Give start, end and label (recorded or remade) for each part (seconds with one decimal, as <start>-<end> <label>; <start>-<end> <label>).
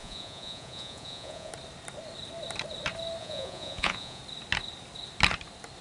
0.0-1.5 remade; 1.5-3.2 recorded; 3.2-4.2 remade; 4.2-5.8 recorded